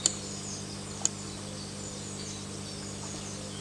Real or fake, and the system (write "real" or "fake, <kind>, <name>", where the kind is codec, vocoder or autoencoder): real